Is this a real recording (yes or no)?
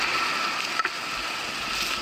yes